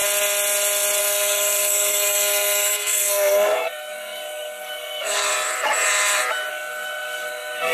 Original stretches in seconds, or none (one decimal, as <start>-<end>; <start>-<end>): 0.0-1.0; 5.3-6.5